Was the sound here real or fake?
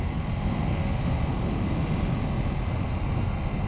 real